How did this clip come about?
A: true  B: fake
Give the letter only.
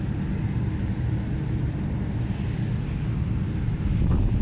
A